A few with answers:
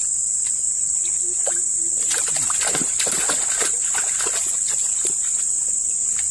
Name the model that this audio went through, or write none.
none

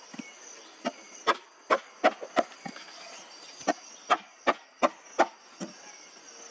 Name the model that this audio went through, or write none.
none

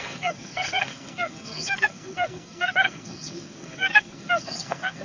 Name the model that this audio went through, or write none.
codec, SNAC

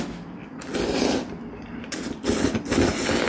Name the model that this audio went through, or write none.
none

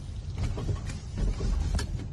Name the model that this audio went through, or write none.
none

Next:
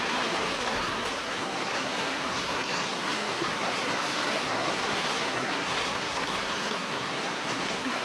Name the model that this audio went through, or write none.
codec, SNAC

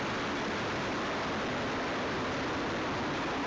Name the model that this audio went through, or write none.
none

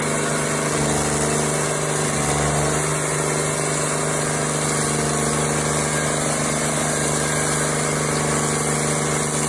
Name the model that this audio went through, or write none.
none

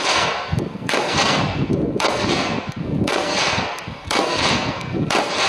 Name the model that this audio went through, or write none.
codec, SNAC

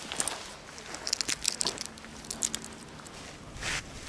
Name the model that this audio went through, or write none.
none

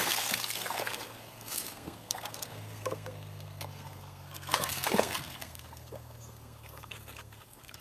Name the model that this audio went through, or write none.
codec, SNAC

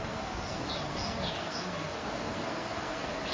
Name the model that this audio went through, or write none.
codec, SNAC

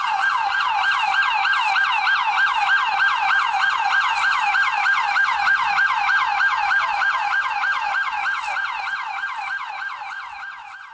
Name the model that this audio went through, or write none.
none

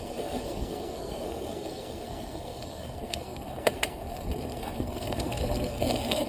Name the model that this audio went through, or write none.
codec, SNAC